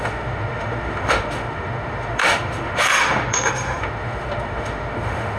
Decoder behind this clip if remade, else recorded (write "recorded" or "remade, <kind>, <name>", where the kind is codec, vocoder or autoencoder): remade, autoencoder, DAC-VAE